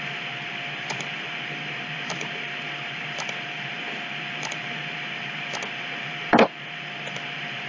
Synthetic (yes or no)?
yes